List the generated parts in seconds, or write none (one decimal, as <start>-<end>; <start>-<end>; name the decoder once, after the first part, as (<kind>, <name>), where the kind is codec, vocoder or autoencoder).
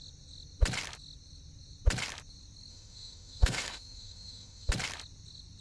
2.7-4.7 (autoencoder, DAC-VAE)